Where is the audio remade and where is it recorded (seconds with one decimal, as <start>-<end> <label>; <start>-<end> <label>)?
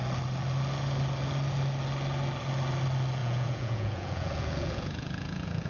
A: 0.0-3.2 recorded; 3.2-5.7 remade